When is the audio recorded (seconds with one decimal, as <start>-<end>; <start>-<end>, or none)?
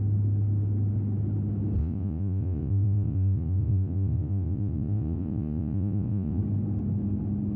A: 0.0-1.8; 6.4-7.6